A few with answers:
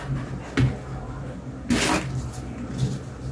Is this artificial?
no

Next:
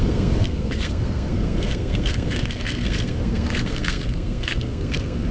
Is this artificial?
yes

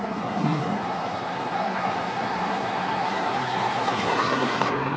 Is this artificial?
yes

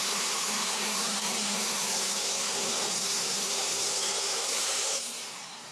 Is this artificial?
yes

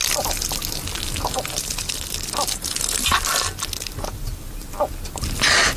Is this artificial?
no